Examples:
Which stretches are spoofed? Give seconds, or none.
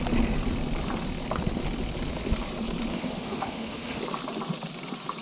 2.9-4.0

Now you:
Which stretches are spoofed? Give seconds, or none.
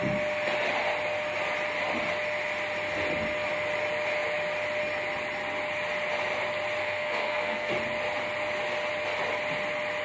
6.8-7.7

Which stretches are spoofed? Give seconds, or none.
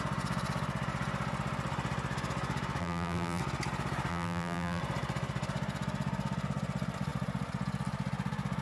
2.8-3.4; 4.1-4.8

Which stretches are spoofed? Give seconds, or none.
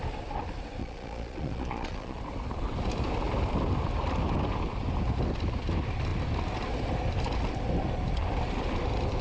0.8-2.2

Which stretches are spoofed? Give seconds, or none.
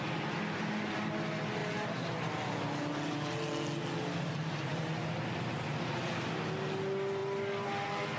none